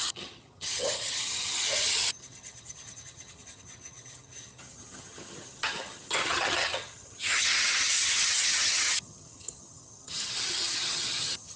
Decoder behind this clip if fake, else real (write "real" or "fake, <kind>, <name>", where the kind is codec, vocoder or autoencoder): fake, vocoder, HiFi-GAN